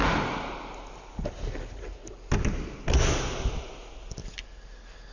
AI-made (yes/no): no